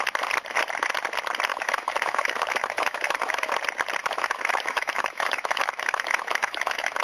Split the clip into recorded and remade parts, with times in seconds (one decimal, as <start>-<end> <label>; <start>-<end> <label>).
0.0-1.5 recorded; 1.5-3.5 remade; 3.5-4.0 recorded; 4.0-7.0 remade

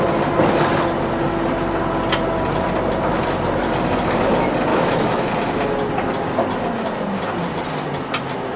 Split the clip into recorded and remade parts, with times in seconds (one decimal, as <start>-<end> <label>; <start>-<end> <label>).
0.0-4.7 recorded; 4.7-5.3 remade; 5.3-8.6 recorded